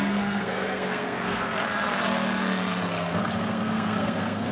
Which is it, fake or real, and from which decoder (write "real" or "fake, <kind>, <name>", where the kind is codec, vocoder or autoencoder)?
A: fake, codec, SNAC